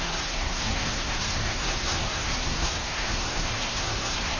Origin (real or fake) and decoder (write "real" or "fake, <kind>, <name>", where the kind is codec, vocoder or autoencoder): fake, codec, SNAC